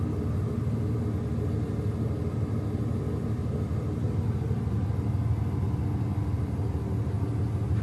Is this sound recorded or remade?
recorded